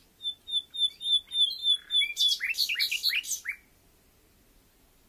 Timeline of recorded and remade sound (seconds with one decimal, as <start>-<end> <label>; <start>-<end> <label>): 0.0-5.1 recorded